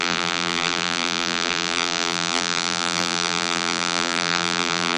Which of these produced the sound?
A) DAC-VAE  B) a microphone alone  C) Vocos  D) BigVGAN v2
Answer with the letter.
D